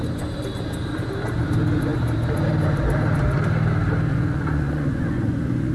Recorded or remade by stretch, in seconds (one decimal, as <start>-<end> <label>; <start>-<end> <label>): 0.0-4.1 recorded; 4.1-5.7 remade